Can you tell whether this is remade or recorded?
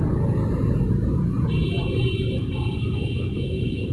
remade